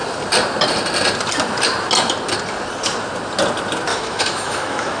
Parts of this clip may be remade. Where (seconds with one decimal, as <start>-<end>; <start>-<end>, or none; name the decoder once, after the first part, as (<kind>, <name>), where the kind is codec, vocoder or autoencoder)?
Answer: 3.9-5.0 (autoencoder, DAC-VAE)